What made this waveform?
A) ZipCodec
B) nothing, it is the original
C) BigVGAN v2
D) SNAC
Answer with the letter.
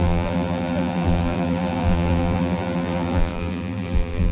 C